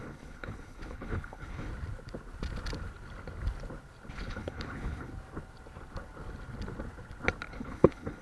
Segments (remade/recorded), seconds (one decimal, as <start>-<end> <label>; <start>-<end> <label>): 0.0-1.7 remade; 1.7-4.1 recorded; 4.1-5.1 remade; 5.1-7.5 recorded; 7.5-8.2 remade